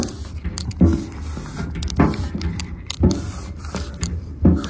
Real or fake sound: fake